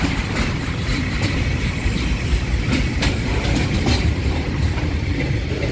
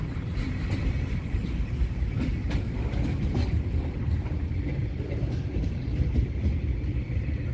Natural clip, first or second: second